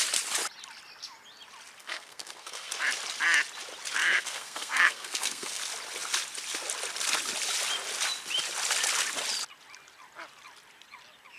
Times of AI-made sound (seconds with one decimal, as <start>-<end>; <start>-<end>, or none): 1.8-2.7; 4.0-5.6